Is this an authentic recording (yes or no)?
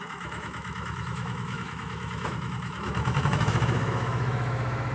no